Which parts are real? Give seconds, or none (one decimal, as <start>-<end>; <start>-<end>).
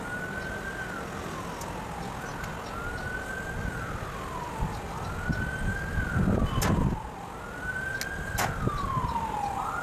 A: 0.0-9.8